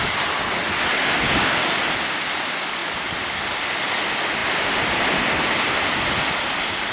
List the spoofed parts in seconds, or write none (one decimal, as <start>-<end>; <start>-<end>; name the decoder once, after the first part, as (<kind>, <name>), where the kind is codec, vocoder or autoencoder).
0.9-1.8 (codec, DAC)